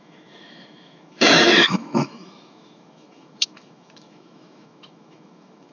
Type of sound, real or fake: fake